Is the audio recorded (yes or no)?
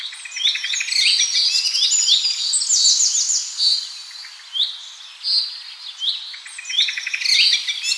yes